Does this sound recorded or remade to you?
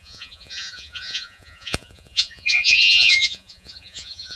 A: remade